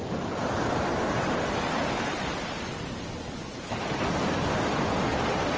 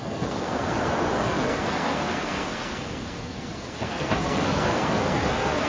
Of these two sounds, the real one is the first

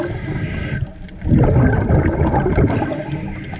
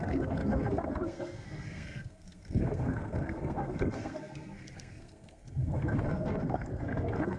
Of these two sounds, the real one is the first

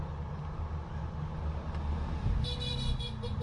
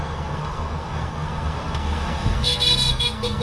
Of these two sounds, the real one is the first